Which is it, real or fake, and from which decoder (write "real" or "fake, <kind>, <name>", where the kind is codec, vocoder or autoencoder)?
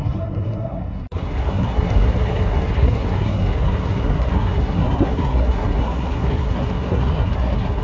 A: fake, codec, SNAC